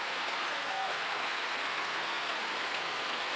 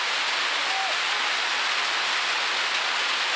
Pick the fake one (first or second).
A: first